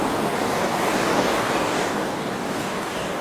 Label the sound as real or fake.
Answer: fake